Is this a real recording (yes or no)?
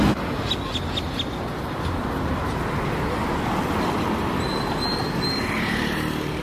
yes